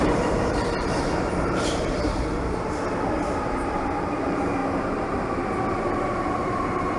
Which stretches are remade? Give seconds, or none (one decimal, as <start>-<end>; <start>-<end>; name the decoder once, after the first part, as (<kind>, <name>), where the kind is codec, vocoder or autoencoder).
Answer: 0.0-4.6 (vocoder, BigVGAN v2); 5.7-7.0